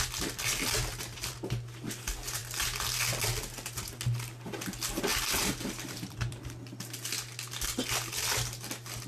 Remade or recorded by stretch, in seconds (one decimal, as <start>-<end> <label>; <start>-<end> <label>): 0.0-0.5 recorded; 0.5-1.3 remade; 1.3-5.1 recorded; 5.1-6.4 remade; 6.4-9.1 recorded